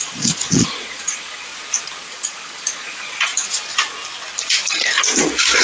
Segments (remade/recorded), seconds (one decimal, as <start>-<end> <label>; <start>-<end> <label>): 0.0-1.5 remade; 1.5-2.1 recorded; 2.1-3.3 remade; 3.3-5.6 recorded